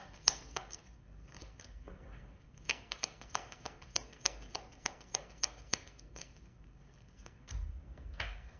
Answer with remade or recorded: remade